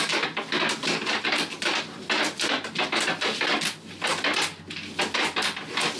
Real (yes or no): yes